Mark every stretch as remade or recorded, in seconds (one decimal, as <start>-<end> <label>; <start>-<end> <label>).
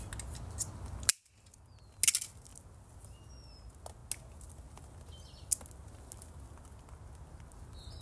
0.0-8.0 recorded